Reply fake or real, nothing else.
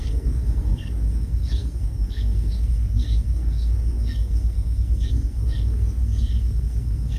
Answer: fake